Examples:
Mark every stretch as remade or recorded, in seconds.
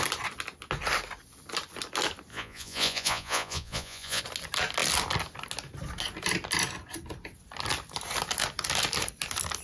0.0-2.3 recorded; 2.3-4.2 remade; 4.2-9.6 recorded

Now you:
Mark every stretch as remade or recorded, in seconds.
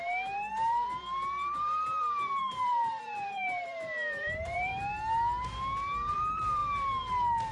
0.0-0.5 recorded; 0.5-4.7 remade; 4.7-6.1 recorded; 6.1-6.6 remade; 6.6-7.5 recorded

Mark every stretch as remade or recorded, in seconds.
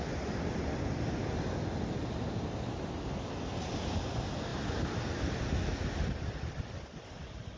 0.0-7.6 recorded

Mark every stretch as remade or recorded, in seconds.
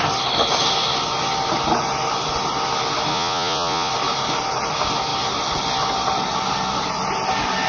0.0-3.1 recorded; 3.1-3.9 remade; 3.9-7.7 recorded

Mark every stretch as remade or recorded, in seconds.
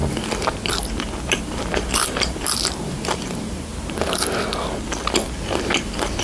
0.0-1.4 recorded; 1.4-3.7 remade; 3.7-5.5 recorded; 5.5-6.2 remade